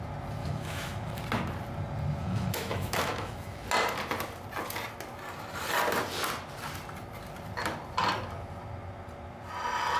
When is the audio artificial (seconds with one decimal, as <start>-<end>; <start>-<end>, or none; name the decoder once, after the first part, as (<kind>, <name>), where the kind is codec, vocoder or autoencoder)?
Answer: 0.4-1.2 (autoencoder, DAC-VAE); 2.2-3.6